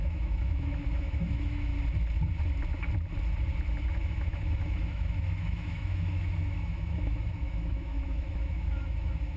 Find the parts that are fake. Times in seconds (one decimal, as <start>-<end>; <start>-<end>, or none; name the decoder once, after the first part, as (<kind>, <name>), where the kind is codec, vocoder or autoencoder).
0.0-1.7 (autoencoder, DAC-VAE); 3.9-9.4